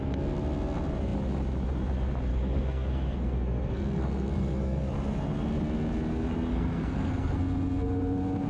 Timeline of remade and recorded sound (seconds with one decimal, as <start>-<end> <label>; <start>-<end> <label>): 0.0-2.3 recorded; 2.3-4.9 remade; 4.9-6.5 recorded; 6.5-7.4 remade; 7.4-8.5 recorded